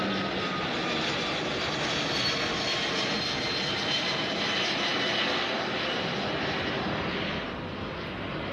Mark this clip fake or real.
real